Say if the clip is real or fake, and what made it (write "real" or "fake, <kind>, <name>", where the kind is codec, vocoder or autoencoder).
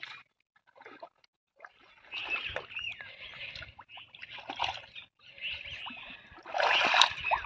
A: real